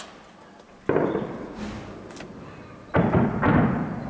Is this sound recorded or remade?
recorded